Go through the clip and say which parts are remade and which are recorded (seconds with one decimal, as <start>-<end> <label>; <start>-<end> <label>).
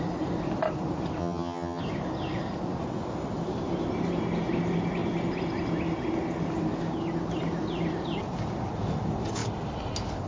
0.0-1.2 recorded; 1.2-1.8 remade; 1.8-10.3 recorded